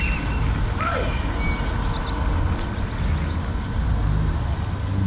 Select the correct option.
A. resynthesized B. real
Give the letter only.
B